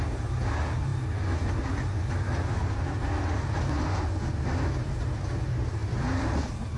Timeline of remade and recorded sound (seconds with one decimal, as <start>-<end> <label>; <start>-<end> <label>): 0.0-0.9 recorded; 0.9-1.7 remade; 1.7-5.8 recorded; 5.8-6.8 remade